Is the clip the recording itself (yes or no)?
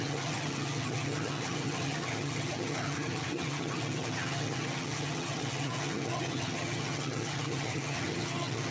no